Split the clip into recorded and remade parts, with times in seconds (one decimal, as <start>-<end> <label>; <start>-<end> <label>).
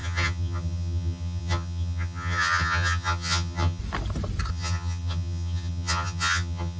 0.0-3.8 remade; 3.8-4.5 recorded; 4.5-6.8 remade